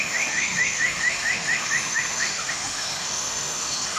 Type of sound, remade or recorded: remade